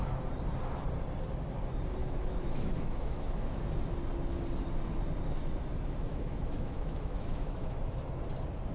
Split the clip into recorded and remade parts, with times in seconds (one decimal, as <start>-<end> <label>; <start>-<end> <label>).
0.0-2.0 recorded; 2.0-3.6 remade; 3.6-6.1 recorded; 6.1-7.8 remade; 7.8-8.7 recorded